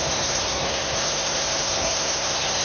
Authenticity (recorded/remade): remade